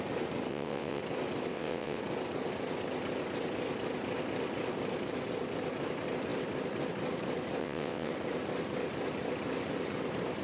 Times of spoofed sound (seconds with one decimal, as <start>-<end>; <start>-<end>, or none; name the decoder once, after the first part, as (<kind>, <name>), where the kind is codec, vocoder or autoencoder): 0.5-1.0 (vocoder, WaveNeXt); 1.5-2.0; 7.6-8.1